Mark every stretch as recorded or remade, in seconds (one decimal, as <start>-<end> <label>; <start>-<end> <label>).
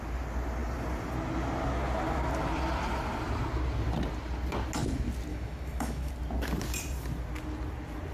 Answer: 0.0-5.3 recorded; 5.3-6.1 remade; 6.1-8.1 recorded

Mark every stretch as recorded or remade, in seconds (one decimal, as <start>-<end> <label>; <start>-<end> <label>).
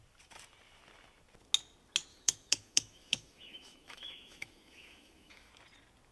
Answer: 0.0-2.1 recorded; 2.1-5.5 remade; 5.5-6.1 recorded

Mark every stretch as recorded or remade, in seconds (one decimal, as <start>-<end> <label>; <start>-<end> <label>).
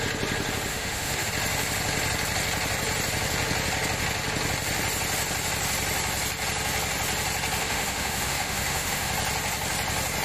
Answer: 0.0-0.7 recorded; 0.7-1.3 remade; 1.3-7.6 recorded; 7.6-9.1 remade; 9.1-10.2 recorded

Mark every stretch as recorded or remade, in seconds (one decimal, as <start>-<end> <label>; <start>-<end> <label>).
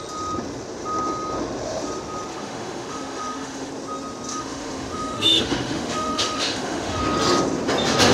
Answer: 0.0-2.3 recorded; 2.3-3.7 remade; 3.7-4.3 recorded; 4.3-7.0 remade; 7.0-8.1 recorded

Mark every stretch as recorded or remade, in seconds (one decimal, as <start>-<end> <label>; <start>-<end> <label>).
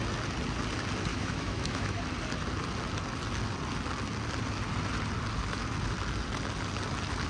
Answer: 0.0-1.1 recorded; 1.1-2.0 remade; 2.0-7.3 recorded